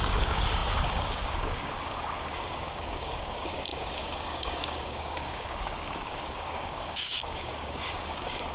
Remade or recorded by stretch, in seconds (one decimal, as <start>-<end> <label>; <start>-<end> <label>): 0.0-8.5 remade